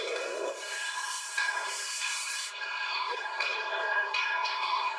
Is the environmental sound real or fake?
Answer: fake